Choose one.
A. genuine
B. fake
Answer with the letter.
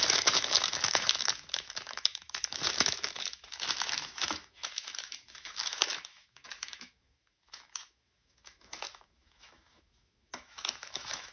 B